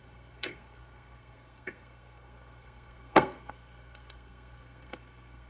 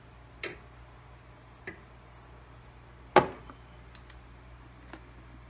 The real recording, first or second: second